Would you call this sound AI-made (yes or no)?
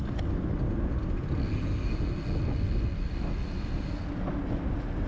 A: no